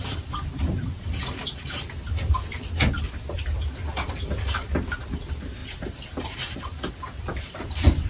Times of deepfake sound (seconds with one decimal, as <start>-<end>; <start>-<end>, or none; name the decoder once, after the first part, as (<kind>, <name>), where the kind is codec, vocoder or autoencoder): 0.0-5.6 (vocoder, BigVGAN v2); 7.0-8.1